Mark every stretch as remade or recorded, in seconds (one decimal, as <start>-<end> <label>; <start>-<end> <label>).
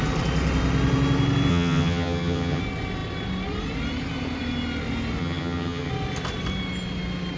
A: 0.0-1.5 recorded; 1.5-2.6 remade; 2.6-5.2 recorded; 5.2-5.9 remade; 5.9-7.4 recorded